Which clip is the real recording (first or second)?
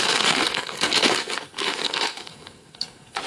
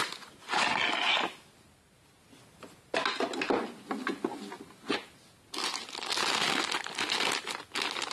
second